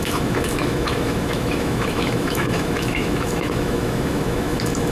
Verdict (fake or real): fake